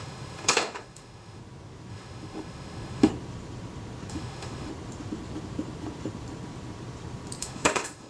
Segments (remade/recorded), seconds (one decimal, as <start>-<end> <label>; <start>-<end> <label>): 0.0-1.4 remade; 1.4-1.9 recorded; 1.9-3.1 remade; 3.1-4.1 recorded; 4.1-4.7 remade; 4.7-7.4 recorded; 7.4-8.1 remade